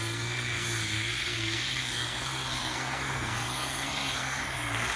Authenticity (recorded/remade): remade